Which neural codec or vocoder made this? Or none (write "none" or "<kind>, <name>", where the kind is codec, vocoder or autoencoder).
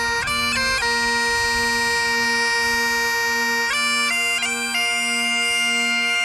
none